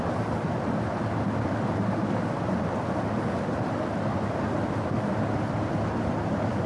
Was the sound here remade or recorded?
recorded